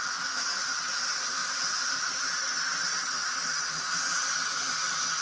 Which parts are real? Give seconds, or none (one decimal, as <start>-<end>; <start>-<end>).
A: 0.0-1.4; 4.5-5.2